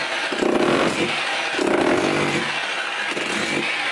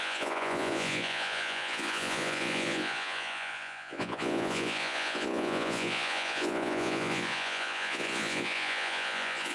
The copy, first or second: second